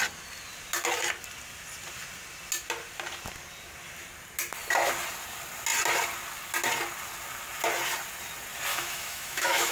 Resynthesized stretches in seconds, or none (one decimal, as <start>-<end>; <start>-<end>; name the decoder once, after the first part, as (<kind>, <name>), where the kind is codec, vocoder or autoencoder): 8.7-9.7 (autoencoder, DAC-VAE)